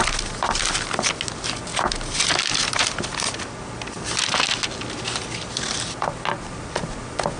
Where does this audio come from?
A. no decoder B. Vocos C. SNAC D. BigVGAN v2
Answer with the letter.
A